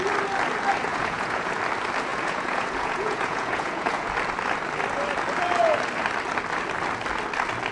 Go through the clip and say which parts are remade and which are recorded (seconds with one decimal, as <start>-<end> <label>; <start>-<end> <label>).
0.0-0.9 recorded; 0.9-1.6 remade; 1.6-2.1 recorded; 2.1-4.1 remade; 4.1-7.7 recorded